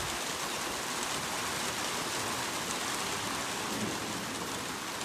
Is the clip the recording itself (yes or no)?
yes